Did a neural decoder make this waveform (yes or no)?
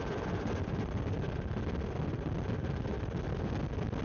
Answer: no